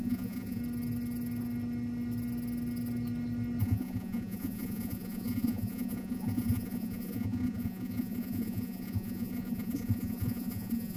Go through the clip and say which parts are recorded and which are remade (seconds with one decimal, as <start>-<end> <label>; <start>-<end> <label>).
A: 0.0-0.6 remade; 0.6-3.6 recorded; 3.6-11.0 remade